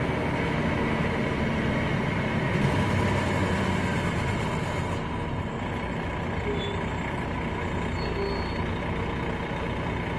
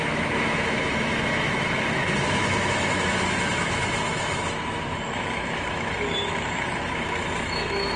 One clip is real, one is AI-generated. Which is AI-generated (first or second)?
second